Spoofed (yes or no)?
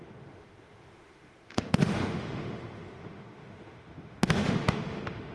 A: yes